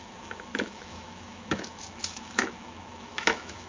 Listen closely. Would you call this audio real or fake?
fake